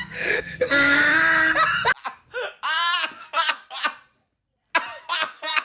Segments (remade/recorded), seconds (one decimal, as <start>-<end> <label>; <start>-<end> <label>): 0.0-1.0 remade; 1.0-3.2 recorded; 3.2-3.8 remade; 3.8-5.0 recorded; 5.0-5.6 remade